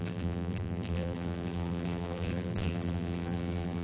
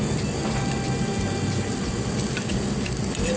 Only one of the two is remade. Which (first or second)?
first